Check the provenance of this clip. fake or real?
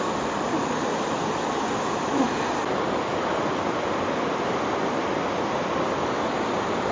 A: fake